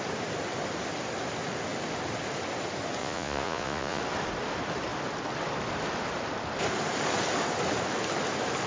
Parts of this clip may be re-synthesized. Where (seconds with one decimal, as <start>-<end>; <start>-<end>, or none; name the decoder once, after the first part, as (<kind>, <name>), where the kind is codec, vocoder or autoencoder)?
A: 3.0-4.0 (vocoder, Vocos)